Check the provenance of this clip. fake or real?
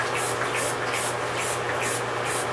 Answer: real